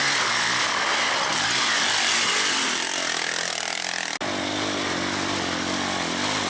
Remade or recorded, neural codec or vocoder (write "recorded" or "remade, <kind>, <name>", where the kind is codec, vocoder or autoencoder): recorded